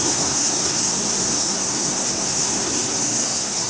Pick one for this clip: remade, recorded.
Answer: remade